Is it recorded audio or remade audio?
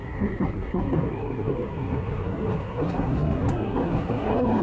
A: remade